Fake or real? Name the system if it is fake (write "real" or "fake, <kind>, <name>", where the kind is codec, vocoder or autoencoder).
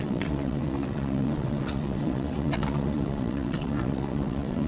fake, vocoder, WaveNeXt